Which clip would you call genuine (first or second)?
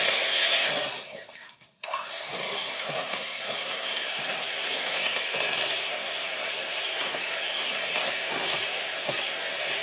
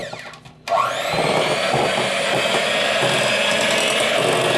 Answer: second